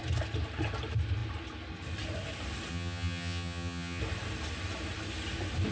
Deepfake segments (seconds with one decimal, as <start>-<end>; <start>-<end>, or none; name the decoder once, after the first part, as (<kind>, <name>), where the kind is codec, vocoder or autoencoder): 2.7-4.0 (vocoder, HiFi-GAN)